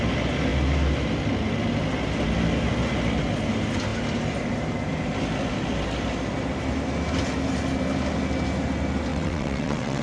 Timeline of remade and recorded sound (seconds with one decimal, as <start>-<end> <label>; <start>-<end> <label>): 0.0-9.1 recorded; 9.1-10.0 remade